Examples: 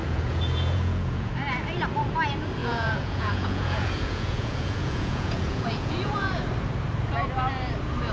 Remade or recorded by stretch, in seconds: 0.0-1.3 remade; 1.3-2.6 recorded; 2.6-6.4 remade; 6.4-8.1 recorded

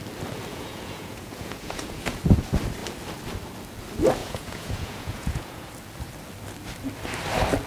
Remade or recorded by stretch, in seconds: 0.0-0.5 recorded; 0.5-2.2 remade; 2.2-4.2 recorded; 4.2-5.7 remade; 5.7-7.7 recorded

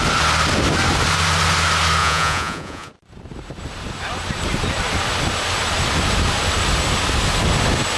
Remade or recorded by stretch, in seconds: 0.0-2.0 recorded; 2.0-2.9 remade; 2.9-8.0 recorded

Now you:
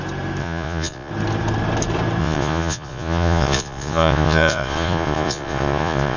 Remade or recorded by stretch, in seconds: 0.0-0.4 recorded; 0.4-1.1 remade; 1.1-2.2 recorded; 2.2-6.2 remade

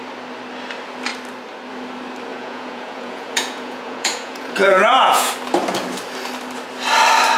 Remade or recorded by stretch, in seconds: 0.0-2.3 recorded; 2.3-5.3 remade; 5.3-7.4 recorded